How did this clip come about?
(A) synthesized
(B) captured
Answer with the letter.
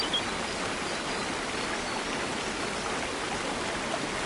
B